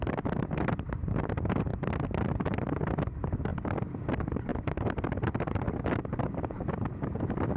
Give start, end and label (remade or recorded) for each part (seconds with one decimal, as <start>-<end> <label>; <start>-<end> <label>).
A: 0.0-1.7 remade; 1.7-2.3 recorded; 2.3-3.5 remade; 3.5-4.0 recorded; 4.0-4.5 remade; 4.5-5.4 recorded; 5.4-7.6 remade